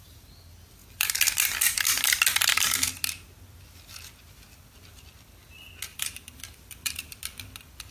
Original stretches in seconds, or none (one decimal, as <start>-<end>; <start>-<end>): 0.0-5.9; 7.2-7.9